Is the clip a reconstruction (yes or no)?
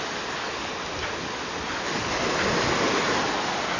no